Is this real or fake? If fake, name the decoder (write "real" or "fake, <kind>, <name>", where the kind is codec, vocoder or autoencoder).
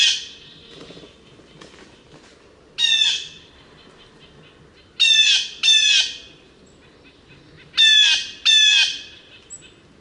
real